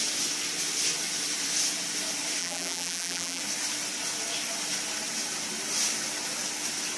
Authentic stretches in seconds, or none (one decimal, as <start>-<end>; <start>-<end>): 0.0-2.4; 3.4-7.0